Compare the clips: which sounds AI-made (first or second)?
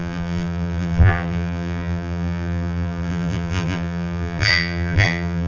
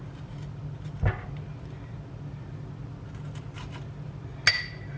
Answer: first